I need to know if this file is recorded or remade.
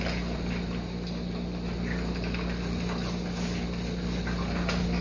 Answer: recorded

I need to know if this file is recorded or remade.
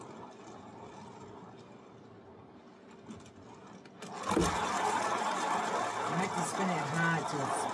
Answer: recorded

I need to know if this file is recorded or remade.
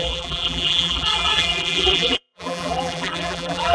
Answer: remade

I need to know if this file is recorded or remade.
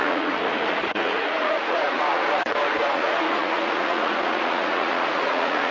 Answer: remade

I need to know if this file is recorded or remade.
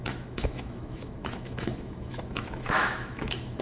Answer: remade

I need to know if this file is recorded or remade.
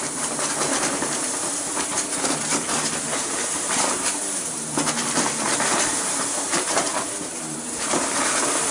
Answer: remade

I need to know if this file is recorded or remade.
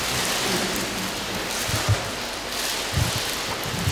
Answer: recorded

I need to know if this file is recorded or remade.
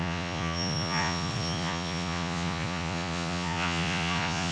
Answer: remade